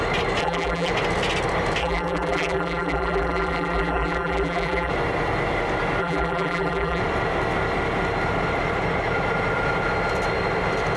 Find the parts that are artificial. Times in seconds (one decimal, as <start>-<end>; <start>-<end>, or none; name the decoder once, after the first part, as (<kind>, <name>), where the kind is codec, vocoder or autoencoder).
0.4-0.9 (vocoder, BigVGAN v2); 1.8-4.9; 6.0-7.0

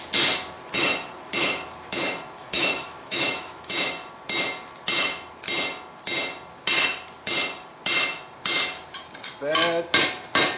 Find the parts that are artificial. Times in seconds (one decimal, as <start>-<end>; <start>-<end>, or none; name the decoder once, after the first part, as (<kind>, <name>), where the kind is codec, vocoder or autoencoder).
2.4-3.7 (autoencoder, DAC-VAE)